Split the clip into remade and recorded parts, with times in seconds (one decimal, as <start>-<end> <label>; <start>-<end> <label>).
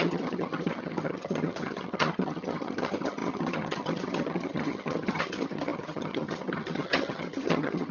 0.0-7.9 remade